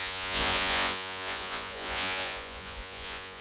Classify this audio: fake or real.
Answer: fake